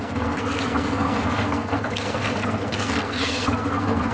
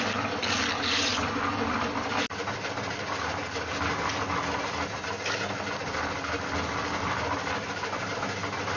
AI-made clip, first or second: first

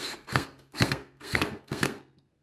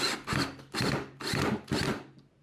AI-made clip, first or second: first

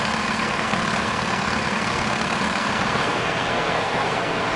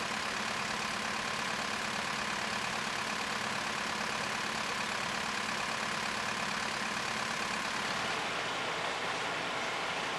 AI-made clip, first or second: first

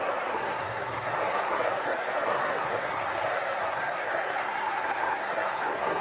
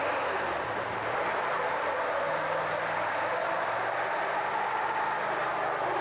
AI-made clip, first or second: first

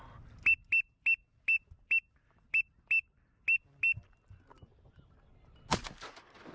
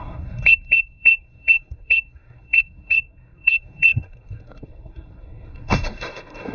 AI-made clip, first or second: second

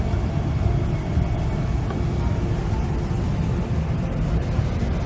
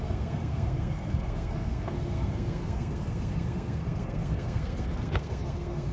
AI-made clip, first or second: second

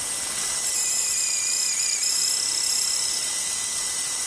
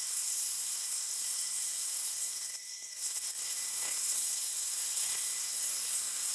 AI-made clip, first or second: second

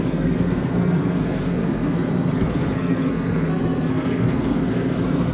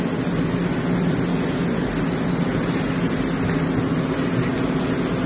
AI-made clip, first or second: first